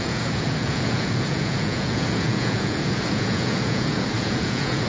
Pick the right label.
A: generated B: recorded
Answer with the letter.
A